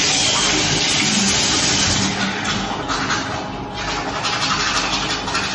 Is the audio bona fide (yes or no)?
yes